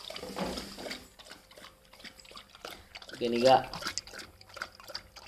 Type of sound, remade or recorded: recorded